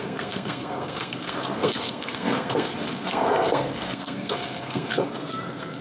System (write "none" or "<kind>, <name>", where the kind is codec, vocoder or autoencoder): codec, SNAC